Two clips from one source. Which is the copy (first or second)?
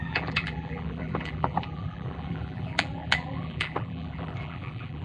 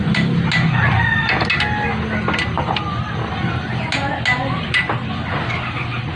first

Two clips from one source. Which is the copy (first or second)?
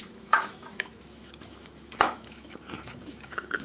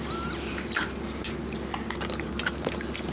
first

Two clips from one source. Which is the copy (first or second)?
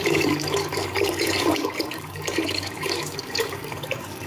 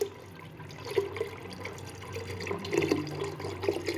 first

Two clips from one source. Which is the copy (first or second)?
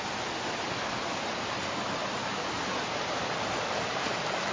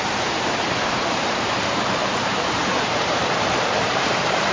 second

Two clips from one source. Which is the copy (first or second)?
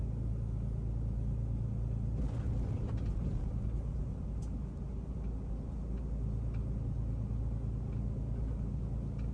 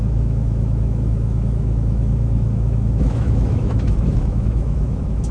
second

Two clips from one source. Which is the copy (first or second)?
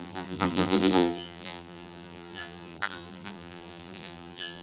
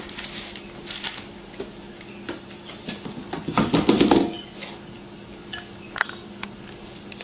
first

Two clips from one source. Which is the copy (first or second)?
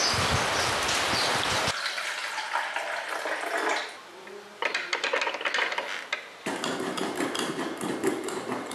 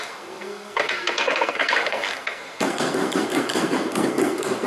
second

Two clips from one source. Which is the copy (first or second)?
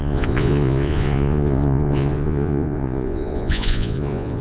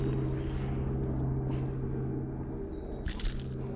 first